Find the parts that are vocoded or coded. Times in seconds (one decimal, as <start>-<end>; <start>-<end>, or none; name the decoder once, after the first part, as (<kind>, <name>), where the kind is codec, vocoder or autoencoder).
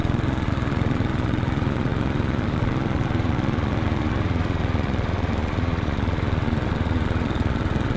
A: 0.0-8.0 (vocoder, Vocos)